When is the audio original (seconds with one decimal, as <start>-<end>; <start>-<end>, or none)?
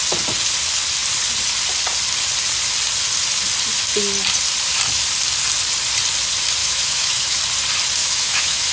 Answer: 0.0-6.6; 7.4-8.0